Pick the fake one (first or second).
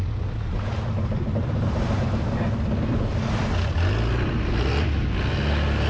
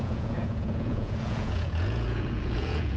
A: second